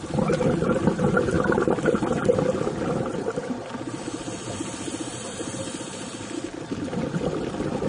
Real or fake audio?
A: real